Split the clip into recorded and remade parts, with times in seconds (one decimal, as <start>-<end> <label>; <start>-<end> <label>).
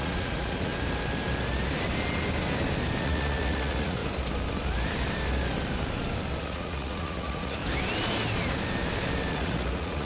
0.0-0.7 remade; 0.7-3.0 recorded; 3.0-4.0 remade; 4.0-6.4 recorded; 6.4-7.6 remade; 7.6-9.3 recorded; 9.3-10.1 remade